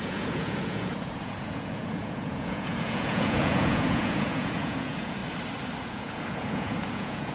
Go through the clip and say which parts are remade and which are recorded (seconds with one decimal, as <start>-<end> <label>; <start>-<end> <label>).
0.0-5.2 remade; 5.2-5.8 recorded; 5.8-7.3 remade